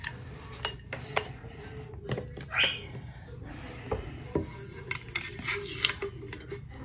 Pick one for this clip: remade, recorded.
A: recorded